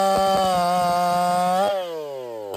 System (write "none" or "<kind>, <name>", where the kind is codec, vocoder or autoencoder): none